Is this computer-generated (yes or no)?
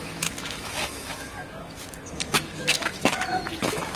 yes